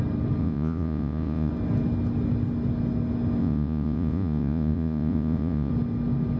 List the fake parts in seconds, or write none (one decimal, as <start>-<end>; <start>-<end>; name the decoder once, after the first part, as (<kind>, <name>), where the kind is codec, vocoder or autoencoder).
0.4-1.5 (vocoder, Vocos); 3.4-5.7